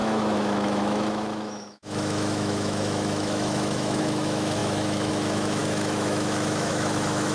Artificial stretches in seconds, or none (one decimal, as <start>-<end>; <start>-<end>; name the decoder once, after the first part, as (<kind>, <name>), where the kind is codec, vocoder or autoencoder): 0.0-7.3 (autoencoder, DAC-VAE)